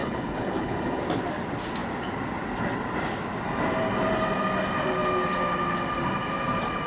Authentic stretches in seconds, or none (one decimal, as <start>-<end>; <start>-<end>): 1.0-6.9